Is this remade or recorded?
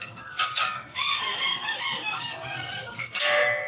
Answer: remade